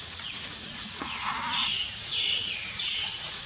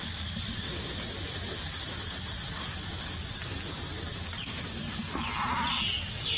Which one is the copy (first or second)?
first